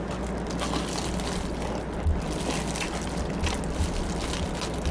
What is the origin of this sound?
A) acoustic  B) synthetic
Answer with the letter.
A